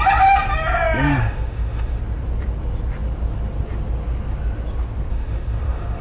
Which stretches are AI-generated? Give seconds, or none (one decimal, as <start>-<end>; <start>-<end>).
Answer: 1.2-2.0; 5.1-6.0